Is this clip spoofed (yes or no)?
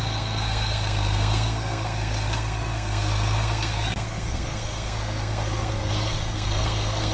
yes